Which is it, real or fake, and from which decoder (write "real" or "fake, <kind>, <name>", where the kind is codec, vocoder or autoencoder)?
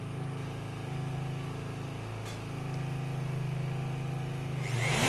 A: real